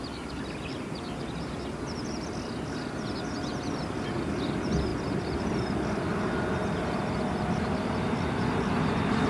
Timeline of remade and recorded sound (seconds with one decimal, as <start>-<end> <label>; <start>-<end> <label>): 0.0-9.3 recorded